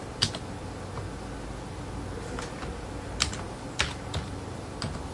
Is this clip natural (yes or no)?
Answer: yes